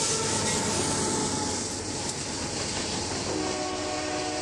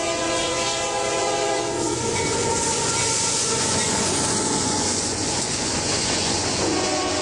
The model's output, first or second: second